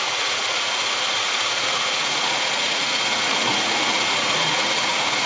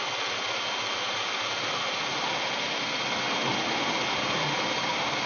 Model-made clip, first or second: first